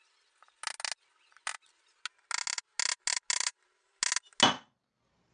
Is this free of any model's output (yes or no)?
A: yes